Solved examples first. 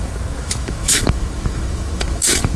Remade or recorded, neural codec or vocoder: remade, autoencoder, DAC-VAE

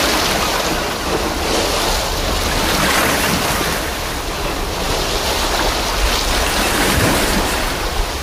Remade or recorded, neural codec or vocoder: recorded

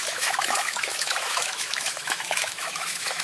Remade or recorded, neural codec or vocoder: remade, autoencoder, DAC-VAE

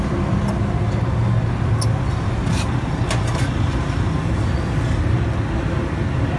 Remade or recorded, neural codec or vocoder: recorded